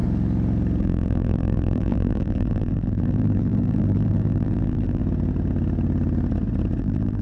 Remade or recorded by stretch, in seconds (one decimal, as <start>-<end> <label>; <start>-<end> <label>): 0.0-0.8 recorded; 0.8-5.0 remade; 5.0-6.8 recorded; 6.8-7.2 remade